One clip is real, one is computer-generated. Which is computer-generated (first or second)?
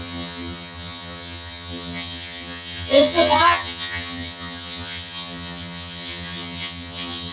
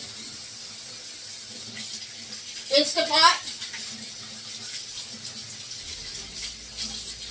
first